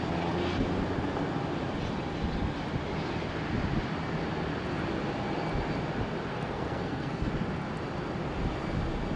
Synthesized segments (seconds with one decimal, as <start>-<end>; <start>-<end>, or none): 6.3-7.3

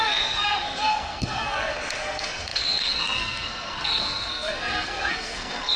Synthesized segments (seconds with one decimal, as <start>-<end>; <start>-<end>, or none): 0.0-5.8

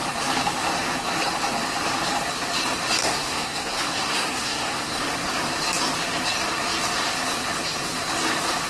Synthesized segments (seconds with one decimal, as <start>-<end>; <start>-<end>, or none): 3.0-5.0

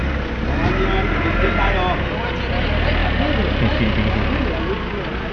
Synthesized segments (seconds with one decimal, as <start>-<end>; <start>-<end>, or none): none

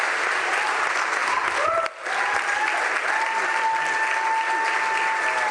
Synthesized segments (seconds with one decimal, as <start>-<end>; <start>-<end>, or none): none